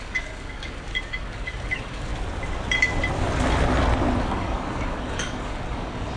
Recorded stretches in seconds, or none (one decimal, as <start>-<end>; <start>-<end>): 2.1-4.2